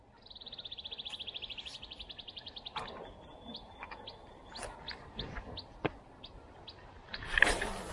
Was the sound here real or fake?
real